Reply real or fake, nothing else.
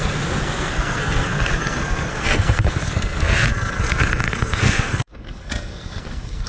fake